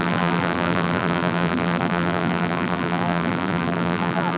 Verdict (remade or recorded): remade